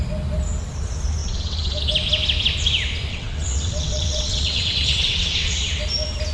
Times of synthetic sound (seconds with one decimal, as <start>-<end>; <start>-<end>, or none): 1.2-1.8; 3.1-5.8